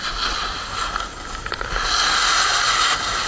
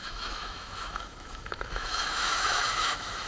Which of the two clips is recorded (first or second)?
first